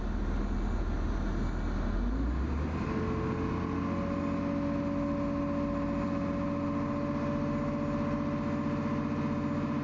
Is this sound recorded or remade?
recorded